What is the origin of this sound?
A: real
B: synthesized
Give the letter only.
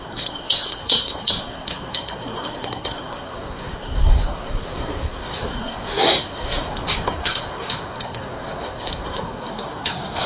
B